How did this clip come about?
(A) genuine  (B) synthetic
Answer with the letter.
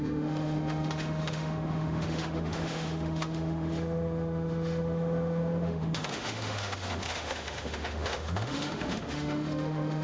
B